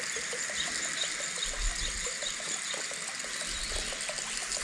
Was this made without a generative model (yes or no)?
yes